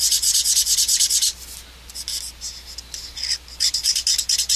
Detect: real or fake real